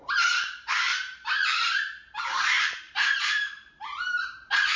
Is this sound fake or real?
fake